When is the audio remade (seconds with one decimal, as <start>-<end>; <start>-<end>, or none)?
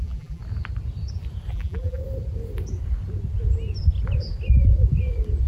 0.0-0.4; 1.5-2.0